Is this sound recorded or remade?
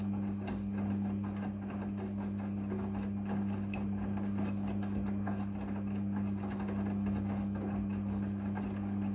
recorded